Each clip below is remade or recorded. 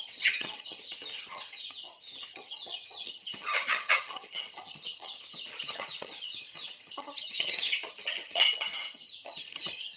remade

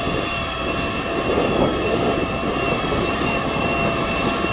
recorded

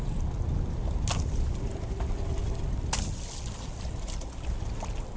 recorded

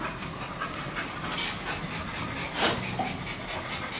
recorded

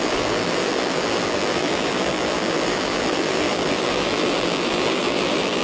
remade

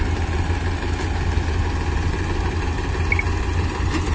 recorded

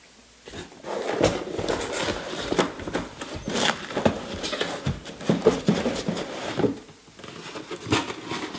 recorded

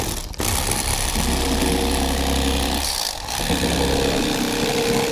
recorded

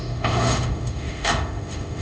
remade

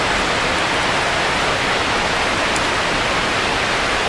recorded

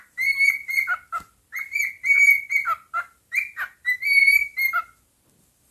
recorded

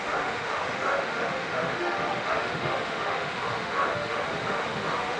remade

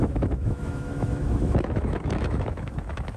remade